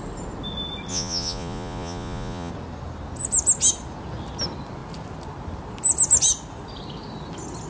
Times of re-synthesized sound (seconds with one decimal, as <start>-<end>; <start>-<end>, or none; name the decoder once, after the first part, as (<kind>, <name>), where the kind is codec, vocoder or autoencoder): 0.9-2.5 (vocoder, Vocos)